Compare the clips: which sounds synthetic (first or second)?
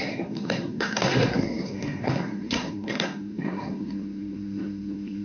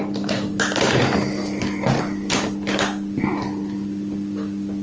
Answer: first